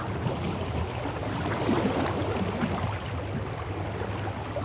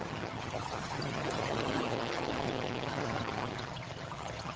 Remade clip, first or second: second